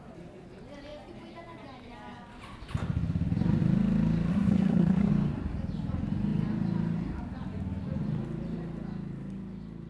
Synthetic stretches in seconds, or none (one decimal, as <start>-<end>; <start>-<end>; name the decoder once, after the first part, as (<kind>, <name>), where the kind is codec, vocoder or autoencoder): 4.3-5.1 (codec, SNAC)